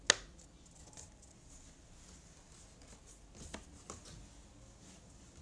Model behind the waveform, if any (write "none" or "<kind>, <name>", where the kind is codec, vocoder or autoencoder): none